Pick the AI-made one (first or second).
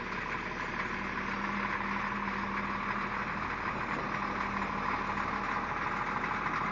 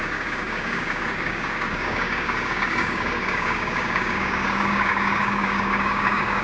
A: second